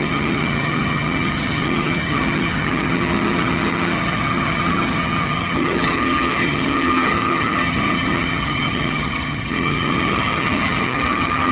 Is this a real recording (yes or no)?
no